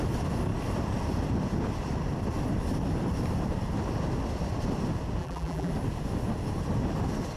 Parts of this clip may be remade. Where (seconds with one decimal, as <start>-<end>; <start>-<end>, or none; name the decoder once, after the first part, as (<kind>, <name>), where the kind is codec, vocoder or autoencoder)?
5.2-5.7 (vocoder, BigVGAN v2)

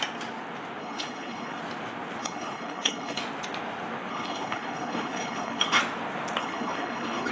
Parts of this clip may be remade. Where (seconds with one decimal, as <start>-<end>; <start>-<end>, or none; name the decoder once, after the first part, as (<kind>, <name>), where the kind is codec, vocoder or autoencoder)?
0.8-1.6 (codec, HILCodec); 2.2-3.2; 4.1-5.8; 6.4-7.3

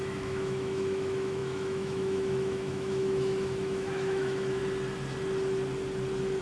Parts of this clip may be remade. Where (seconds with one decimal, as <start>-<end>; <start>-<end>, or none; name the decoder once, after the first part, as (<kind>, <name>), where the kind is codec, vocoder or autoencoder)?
0.0-4.6 (autoencoder, DAC-VAE)